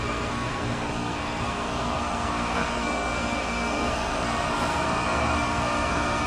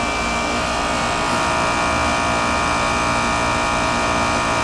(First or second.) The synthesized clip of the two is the first